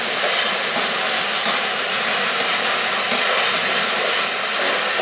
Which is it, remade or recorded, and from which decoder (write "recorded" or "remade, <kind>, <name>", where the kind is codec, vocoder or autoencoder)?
recorded